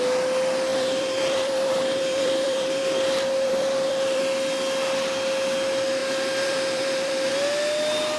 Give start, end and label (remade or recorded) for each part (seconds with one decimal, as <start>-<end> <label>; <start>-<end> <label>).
0.0-0.7 recorded; 0.7-4.2 remade; 4.2-6.0 recorded; 6.0-7.3 remade; 7.3-8.2 recorded